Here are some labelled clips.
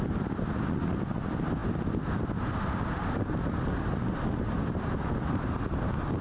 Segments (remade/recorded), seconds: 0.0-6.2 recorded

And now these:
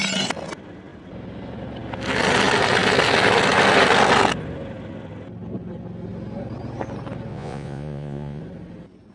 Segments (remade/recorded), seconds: 0.0-7.3 recorded; 7.3-8.4 remade; 8.4-9.1 recorded

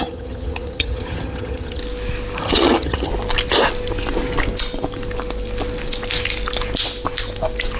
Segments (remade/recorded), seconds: 0.0-1.8 remade; 1.8-2.4 recorded; 2.4-3.1 remade; 3.1-7.8 recorded

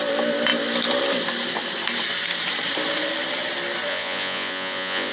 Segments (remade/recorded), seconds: 0.0-3.9 recorded; 3.9-5.1 remade

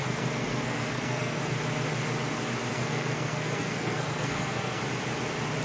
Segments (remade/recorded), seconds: 0.0-1.4 remade; 1.4-2.7 recorded; 2.7-4.8 remade; 4.8-5.6 recorded

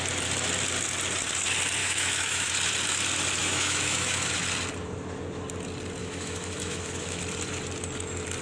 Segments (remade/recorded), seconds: 0.0-1.8 recorded; 1.8-2.5 remade; 2.5-3.4 recorded; 3.4-4.3 remade; 4.3-6.0 recorded; 6.0-7.2 remade; 7.2-8.4 recorded

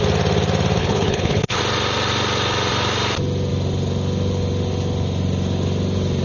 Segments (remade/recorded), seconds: 0.0-0.8 recorded; 0.8-1.6 remade; 1.6-6.2 recorded

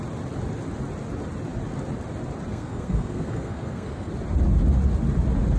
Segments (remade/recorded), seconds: 0.0-2.5 recorded; 2.5-4.1 remade; 4.1-5.6 recorded